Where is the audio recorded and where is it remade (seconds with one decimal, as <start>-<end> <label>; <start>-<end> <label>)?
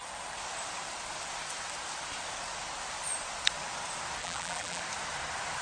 0.0-4.2 recorded; 4.2-4.8 remade; 4.8-5.6 recorded